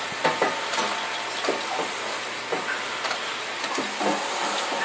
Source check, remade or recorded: recorded